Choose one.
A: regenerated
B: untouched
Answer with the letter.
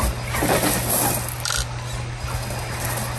B